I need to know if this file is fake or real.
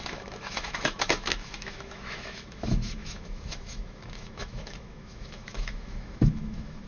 fake